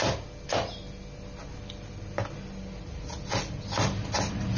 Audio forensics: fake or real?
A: real